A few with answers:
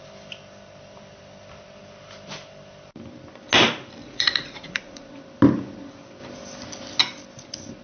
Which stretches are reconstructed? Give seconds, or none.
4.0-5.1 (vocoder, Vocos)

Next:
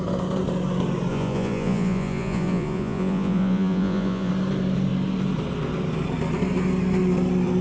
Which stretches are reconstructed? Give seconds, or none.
1.1-4.3 (vocoder, Vocos)

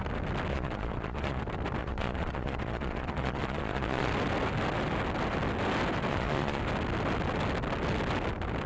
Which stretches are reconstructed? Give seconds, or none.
0.5-1.4 (vocoder, Vocos); 1.8-4.1; 6.1-6.6

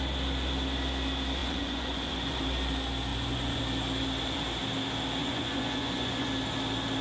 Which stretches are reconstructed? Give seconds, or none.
1.4-2.4 (vocoder, Vocos); 3.1-3.6; 5.2-6.3

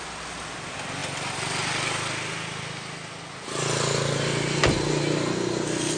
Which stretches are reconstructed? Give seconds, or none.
none